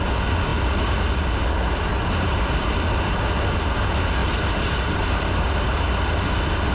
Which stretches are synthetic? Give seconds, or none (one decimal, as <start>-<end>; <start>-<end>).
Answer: 4.2-5.9